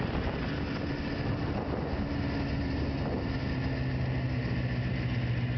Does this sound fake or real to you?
real